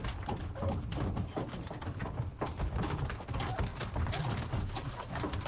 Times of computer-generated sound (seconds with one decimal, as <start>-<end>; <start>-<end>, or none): none